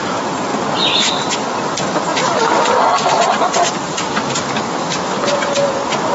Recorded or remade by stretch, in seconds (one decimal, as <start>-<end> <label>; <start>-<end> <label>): 0.0-0.5 recorded; 0.5-1.1 remade; 1.1-2.1 recorded; 2.1-6.1 remade